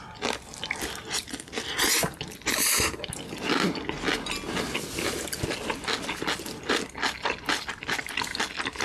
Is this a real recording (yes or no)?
yes